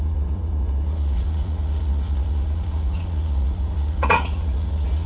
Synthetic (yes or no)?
yes